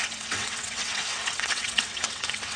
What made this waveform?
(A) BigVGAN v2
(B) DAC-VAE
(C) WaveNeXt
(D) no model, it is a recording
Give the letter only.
C